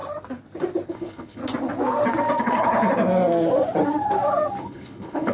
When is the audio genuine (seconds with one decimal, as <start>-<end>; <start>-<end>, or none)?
0.0-0.9; 1.4-2.4; 2.8-4.6